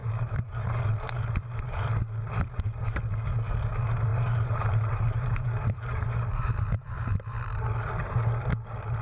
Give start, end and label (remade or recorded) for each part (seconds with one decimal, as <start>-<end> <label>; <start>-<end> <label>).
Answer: 0.0-3.0 remade; 3.0-4.1 recorded; 4.1-7.7 remade; 7.7-9.0 recorded